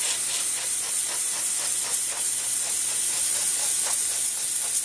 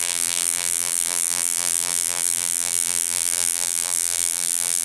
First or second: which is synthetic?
second